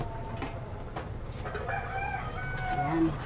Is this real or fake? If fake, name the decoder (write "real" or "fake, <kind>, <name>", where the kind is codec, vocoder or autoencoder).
real